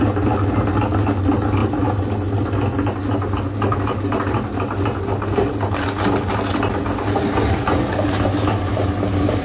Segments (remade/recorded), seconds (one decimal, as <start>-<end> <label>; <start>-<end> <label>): 0.0-9.4 recorded